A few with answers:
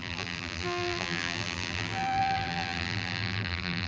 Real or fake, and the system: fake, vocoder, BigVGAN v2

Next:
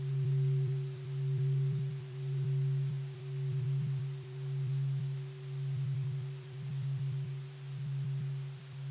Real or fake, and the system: fake, vocoder, BigVGAN v2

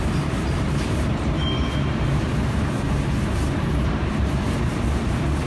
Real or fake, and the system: fake, vocoder, BigVGAN v2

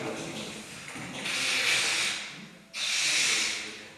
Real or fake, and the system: real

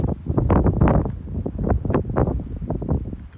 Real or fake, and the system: real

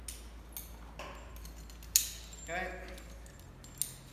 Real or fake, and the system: real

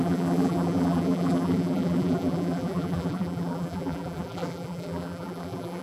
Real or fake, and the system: fake, vocoder, BigVGAN v2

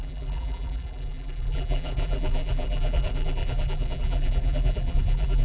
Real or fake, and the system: fake, vocoder, BigVGAN v2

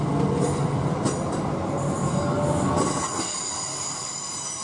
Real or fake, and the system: real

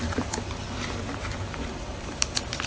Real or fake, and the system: fake, vocoder, BigVGAN v2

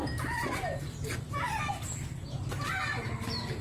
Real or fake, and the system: fake, vocoder, BigVGAN v2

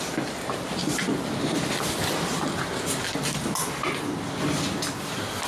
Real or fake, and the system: real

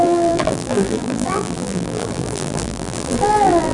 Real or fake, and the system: fake, vocoder, BigVGAN v2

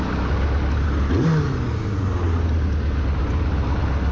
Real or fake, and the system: real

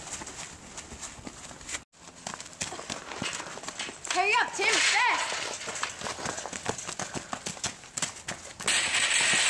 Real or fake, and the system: real